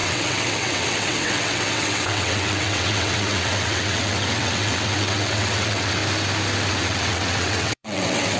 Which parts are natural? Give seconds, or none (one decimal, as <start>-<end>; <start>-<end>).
6.0-6.7